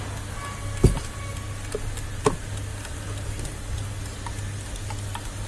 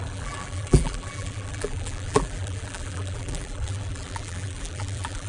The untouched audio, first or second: first